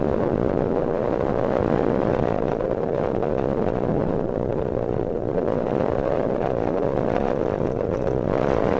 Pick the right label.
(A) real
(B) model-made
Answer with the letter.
B